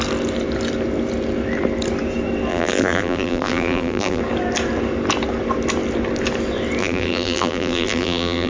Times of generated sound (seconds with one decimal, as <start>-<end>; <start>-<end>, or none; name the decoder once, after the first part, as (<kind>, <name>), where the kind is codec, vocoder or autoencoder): 2.5-4.2 (vocoder, BigVGAN v2); 6.8-8.5